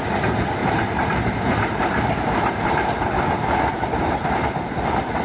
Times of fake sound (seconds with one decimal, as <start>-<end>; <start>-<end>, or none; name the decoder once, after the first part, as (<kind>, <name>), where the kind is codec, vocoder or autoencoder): 0.6-3.7 (vocoder, BigVGAN v2)